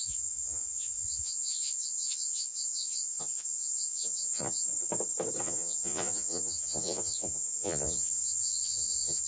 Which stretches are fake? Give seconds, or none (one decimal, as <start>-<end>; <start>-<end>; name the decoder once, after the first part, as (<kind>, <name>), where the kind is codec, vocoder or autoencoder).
0.0-4.7 (vocoder, Vocos); 5.4-9.3